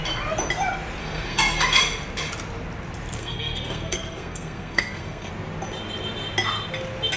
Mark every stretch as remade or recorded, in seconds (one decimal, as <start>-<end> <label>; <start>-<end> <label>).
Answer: 0.0-1.0 recorded; 1.0-1.8 remade; 1.8-3.2 recorded; 3.2-5.3 remade; 5.3-7.2 recorded